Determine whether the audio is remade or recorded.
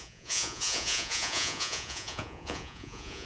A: remade